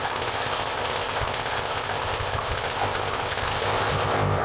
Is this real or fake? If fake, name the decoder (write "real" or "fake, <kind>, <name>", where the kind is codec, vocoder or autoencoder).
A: fake, codec, ZipCodec